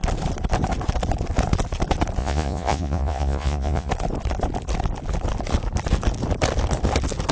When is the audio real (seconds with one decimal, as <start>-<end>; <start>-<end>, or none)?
0.0-2.2; 3.9-7.3